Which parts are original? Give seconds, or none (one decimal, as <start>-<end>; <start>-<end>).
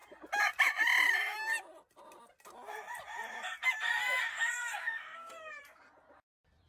0.0-4.3; 5.6-6.7